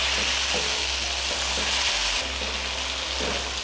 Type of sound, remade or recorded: recorded